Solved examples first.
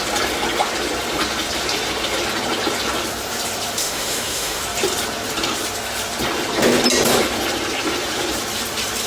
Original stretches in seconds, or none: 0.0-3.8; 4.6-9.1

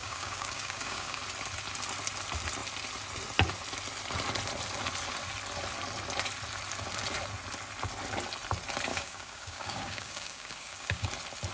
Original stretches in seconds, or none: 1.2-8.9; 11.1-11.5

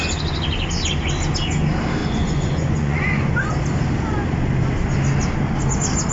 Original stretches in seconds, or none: 0.0-2.0; 3.5-6.1